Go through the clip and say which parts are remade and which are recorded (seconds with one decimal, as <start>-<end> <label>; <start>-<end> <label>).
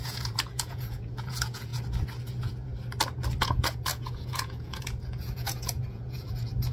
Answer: 0.0-1.7 remade; 1.7-2.3 recorded; 2.3-2.7 remade; 2.7-3.4 recorded; 3.4-6.7 remade